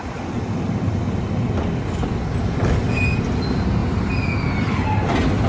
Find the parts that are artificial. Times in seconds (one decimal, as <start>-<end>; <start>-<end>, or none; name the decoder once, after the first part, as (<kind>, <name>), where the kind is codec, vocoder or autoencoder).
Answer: none